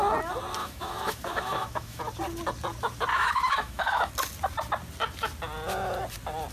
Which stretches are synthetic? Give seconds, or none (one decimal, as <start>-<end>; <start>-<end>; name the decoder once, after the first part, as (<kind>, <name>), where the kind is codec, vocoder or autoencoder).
0.6-2.0 (autoencoder, DAC-VAE); 3.1-4.1